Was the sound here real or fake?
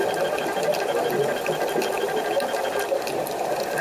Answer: real